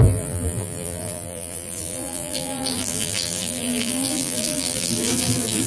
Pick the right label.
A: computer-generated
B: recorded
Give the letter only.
A